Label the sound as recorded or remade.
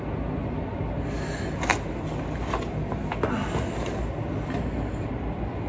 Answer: recorded